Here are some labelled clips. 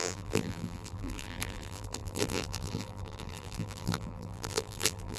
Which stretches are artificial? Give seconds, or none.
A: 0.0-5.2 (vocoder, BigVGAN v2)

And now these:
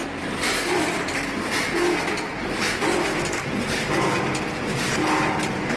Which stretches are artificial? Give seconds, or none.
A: none

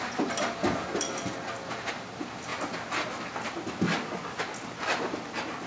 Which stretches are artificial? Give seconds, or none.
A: none

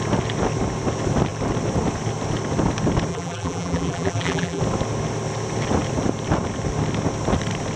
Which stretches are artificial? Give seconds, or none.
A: 3.1-4.6 (vocoder, BigVGAN v2)

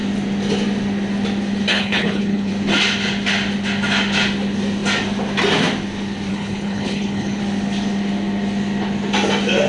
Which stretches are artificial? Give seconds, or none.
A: 1.7-2.5 (codec, HILCodec); 6.3-7.4

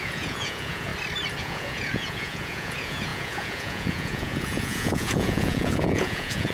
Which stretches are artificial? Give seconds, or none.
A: 0.0-0.9 (vocoder, Vocos); 1.4-6.5

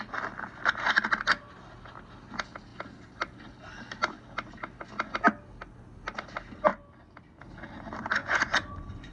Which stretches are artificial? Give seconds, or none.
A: 8.2-9.1 (vocoder, Vocos)